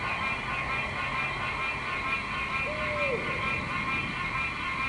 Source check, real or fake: real